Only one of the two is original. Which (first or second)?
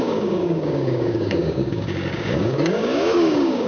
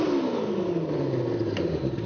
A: second